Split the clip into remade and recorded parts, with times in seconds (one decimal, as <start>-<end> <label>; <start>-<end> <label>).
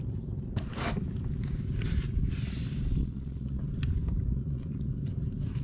0.0-3.0 recorded; 3.0-3.6 remade; 3.6-4.3 recorded; 4.3-4.9 remade; 4.9-5.6 recorded